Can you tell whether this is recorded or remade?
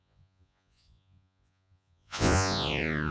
remade